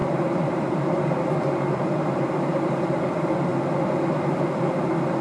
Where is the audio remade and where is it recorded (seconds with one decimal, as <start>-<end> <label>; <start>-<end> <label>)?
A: 0.0-3.1 remade; 3.1-5.2 recorded